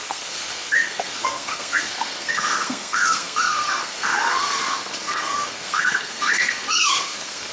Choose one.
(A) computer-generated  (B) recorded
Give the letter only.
A